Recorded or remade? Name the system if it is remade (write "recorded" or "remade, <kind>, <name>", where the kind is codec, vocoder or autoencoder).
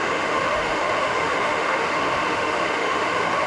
remade, autoencoder, DAC-VAE